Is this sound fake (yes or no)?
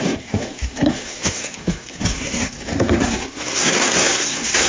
yes